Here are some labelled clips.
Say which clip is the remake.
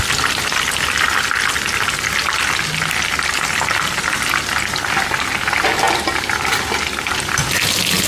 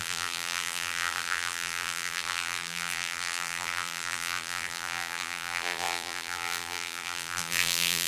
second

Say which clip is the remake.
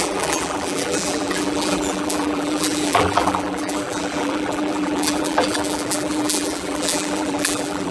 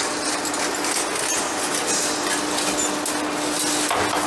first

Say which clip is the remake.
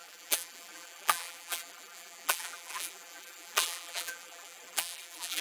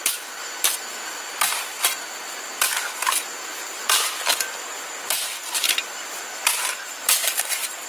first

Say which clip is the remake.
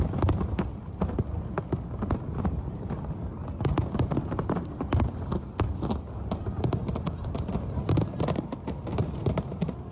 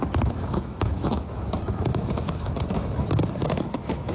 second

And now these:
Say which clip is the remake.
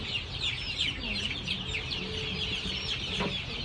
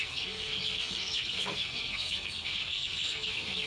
second